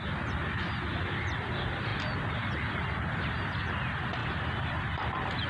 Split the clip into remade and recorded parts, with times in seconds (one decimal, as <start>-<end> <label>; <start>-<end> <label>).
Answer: 0.0-1.9 recorded; 1.9-3.0 remade; 3.0-4.2 recorded; 4.2-5.5 remade